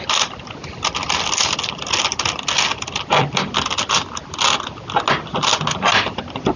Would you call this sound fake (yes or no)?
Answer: no